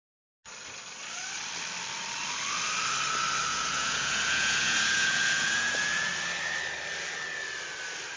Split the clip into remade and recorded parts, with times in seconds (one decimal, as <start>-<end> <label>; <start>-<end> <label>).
0.0-3.5 recorded; 3.5-6.1 remade; 6.1-8.2 recorded